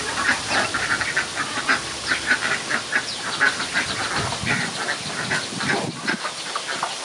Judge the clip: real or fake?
real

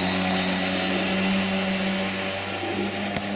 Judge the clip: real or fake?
real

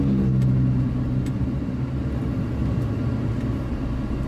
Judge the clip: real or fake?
real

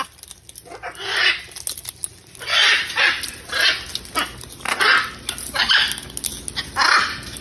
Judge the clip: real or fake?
real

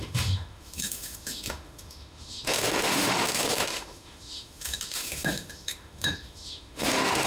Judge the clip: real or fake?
fake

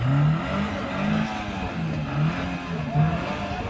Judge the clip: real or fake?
real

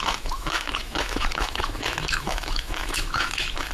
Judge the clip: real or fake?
fake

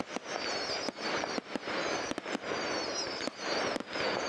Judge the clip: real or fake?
real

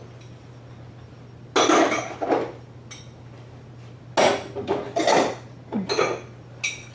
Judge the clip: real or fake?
real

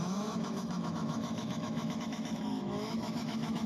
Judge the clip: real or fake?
fake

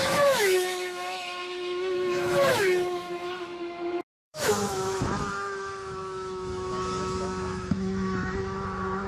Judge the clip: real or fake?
fake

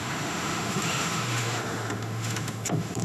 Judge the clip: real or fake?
fake